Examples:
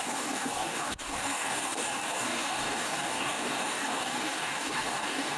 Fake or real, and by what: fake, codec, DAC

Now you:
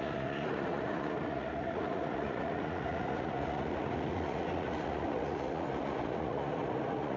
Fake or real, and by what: fake, vocoder, Vocos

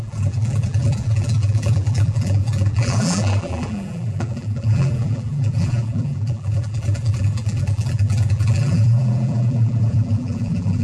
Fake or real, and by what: fake, vocoder, BigVGAN v2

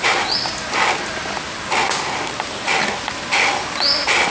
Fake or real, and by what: real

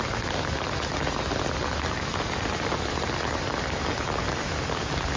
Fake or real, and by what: real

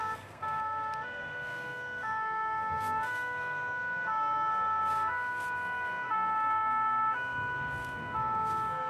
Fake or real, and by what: fake, codec, SNAC